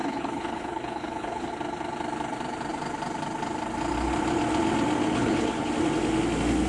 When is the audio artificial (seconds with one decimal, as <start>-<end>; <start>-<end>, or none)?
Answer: 0.0-1.5; 5.0-5.7